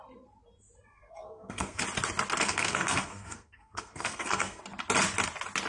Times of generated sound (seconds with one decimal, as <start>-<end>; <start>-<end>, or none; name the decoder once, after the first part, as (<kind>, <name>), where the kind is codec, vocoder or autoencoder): 0.9-1.8 (codec, SNAC); 2.4-4.6